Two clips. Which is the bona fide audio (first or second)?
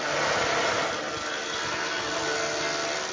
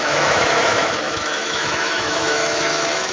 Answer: first